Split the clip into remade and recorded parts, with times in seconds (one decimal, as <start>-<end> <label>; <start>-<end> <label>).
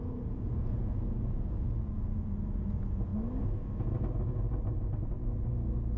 0.0-3.1 remade; 3.1-6.0 recorded